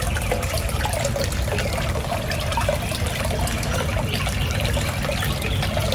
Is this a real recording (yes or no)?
yes